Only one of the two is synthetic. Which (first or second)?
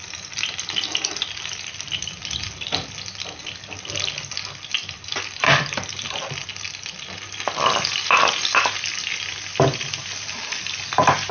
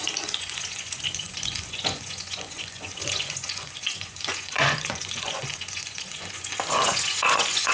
second